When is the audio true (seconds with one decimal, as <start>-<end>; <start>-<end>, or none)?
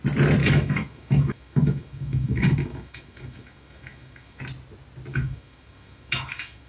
0.0-0.4; 4.4-5.1